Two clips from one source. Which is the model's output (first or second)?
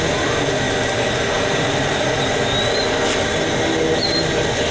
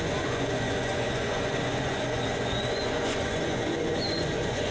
second